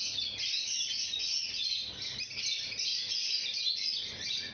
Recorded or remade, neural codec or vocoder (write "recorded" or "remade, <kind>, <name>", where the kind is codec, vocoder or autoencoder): recorded